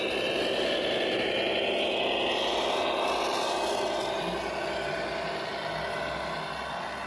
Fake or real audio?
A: real